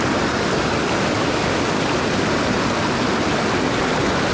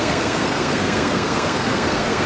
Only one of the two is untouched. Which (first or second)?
first